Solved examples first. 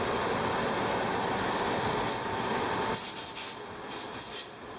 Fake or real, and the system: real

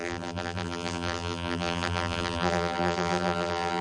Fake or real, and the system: fake, vocoder, BigVGAN v2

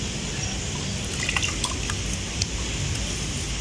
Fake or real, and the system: real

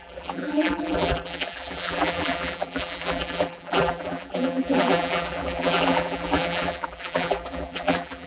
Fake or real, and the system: fake, vocoder, BigVGAN v2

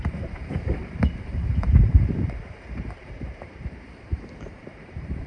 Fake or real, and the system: fake, vocoder, BigVGAN v2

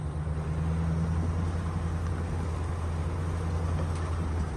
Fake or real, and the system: real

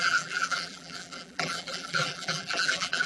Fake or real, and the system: fake, vocoder, BigVGAN v2